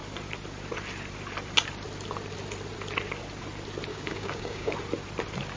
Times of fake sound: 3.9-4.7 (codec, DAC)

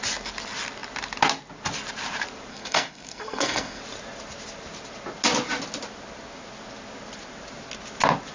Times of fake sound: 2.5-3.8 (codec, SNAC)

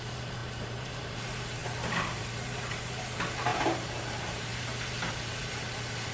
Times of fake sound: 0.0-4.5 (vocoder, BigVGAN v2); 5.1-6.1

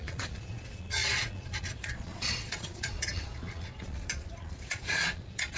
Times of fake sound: 0.0-5.6 (vocoder, Vocos)